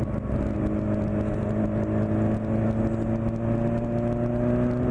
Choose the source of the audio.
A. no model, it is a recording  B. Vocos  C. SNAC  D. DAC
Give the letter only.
A